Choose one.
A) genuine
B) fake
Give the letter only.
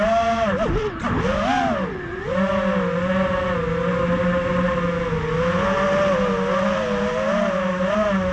A